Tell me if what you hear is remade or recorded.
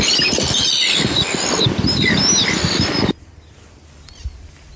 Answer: recorded